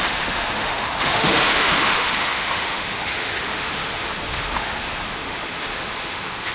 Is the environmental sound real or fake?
fake